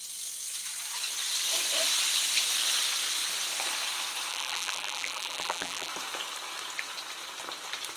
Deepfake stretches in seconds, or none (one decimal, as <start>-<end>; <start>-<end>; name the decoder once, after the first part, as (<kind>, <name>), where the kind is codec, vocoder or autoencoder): 4.3-5.9 (vocoder, BigVGAN v2)